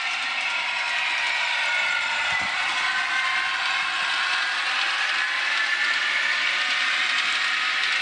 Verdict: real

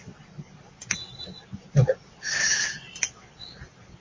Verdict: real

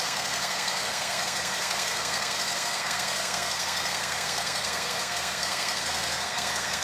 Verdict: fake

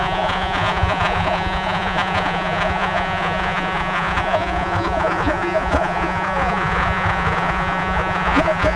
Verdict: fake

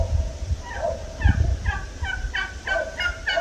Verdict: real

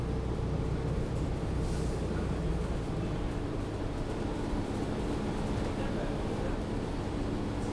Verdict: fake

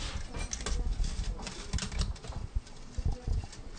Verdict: real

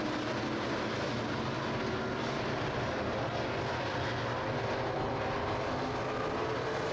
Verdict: real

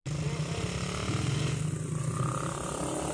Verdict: real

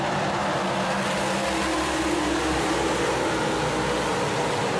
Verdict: real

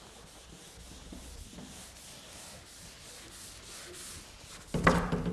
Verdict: real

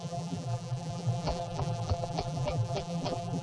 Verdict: fake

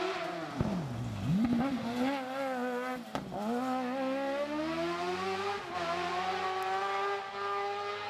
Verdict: real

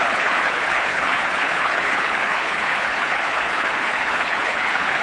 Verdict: fake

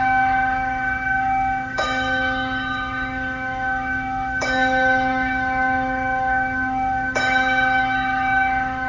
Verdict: fake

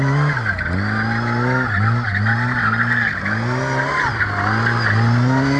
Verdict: real